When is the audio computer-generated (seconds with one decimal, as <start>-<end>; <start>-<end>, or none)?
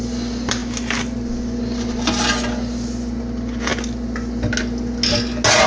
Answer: none